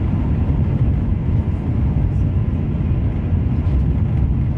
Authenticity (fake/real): real